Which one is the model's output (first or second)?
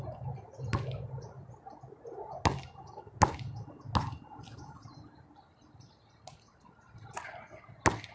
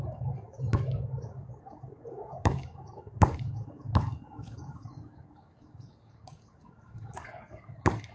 second